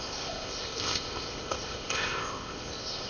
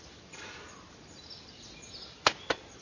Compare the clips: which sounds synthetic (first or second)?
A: first